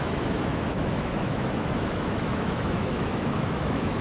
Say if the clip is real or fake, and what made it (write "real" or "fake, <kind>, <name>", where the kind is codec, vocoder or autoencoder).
fake, autoencoder, DAC-VAE